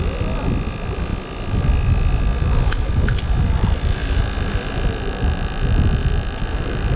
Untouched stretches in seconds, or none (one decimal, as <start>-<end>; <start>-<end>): 0.0-7.0